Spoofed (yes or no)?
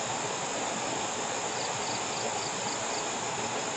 no